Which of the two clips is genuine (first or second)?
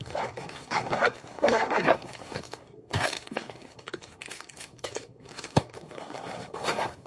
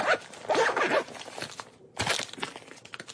second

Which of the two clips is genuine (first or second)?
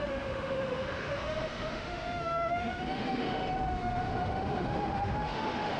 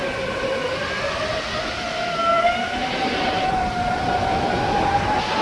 second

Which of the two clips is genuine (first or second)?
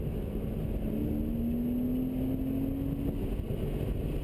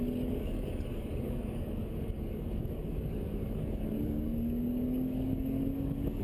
first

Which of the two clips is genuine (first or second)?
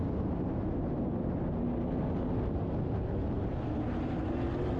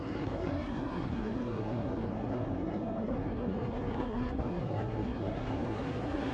first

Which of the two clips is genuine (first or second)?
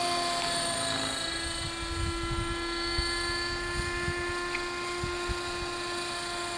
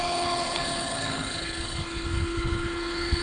first